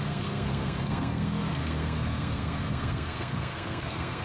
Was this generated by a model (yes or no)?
yes